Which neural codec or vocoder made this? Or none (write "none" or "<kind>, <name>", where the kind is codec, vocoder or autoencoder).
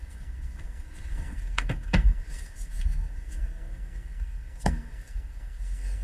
codec, SNAC